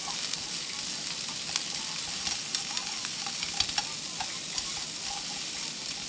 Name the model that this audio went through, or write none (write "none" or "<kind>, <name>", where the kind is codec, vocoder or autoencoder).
none